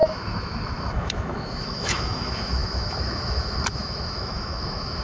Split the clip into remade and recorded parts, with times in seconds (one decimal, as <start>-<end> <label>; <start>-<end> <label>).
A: 0.0-5.0 remade